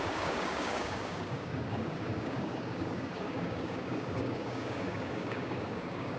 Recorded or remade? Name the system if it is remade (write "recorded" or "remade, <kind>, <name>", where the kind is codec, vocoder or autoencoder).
remade, codec, DAC